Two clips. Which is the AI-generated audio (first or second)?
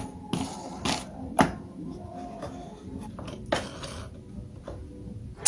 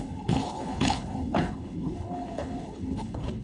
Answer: second